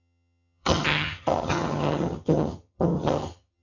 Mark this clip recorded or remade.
remade